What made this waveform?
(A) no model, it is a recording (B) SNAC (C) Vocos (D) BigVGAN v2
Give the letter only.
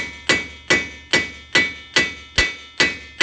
A